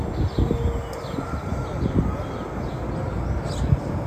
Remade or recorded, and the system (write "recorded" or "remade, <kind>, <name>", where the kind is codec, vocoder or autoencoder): recorded